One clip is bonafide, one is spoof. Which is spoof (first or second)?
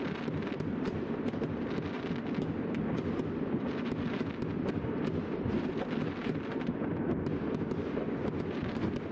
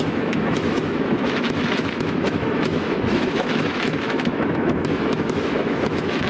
second